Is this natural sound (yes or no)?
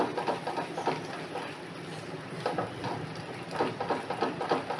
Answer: yes